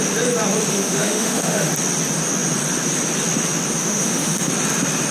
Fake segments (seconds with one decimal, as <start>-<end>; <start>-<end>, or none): 0.7-1.7; 3.8-4.5

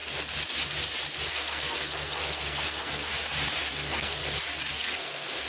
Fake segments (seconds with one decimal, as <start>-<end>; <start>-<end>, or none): 1.3-3.1; 3.7-4.2; 4.7-5.5

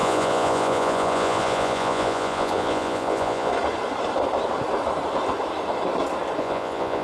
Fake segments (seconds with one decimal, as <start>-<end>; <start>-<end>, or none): 0.0-3.5; 6.4-7.0

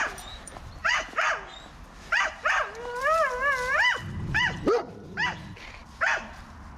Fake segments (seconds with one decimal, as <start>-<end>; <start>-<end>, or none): none